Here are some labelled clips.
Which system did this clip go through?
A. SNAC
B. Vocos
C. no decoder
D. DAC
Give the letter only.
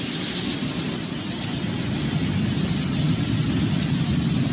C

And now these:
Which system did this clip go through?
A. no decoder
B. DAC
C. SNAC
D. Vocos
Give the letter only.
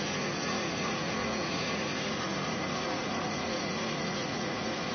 D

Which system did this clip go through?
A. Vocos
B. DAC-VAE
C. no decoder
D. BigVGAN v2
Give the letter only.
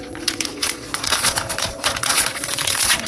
A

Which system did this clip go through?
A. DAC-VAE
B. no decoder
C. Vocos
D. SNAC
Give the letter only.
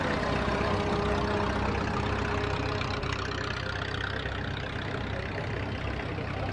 B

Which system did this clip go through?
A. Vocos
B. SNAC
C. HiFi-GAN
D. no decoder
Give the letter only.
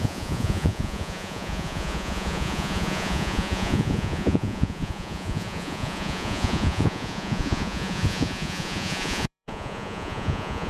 A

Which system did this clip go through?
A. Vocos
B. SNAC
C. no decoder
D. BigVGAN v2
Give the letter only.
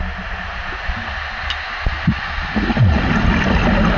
C